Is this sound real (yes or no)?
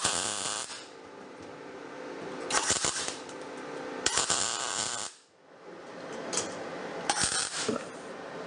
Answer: no